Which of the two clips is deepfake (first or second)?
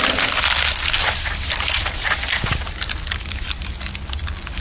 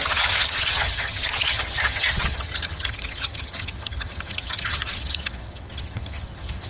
second